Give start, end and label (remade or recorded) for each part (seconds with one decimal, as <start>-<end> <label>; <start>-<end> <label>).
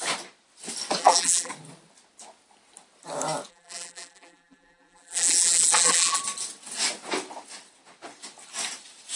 0.0-1.0 recorded; 1.0-1.5 remade; 1.5-3.5 recorded; 3.5-6.2 remade; 6.2-9.2 recorded